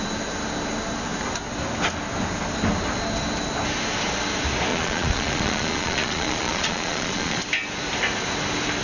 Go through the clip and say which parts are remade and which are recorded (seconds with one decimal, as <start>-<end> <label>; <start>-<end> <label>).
0.0-4.7 recorded; 4.7-7.4 remade; 7.4-8.8 recorded